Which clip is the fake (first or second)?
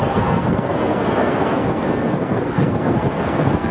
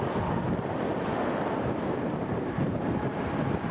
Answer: first